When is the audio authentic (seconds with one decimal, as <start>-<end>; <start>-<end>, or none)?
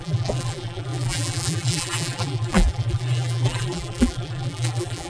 none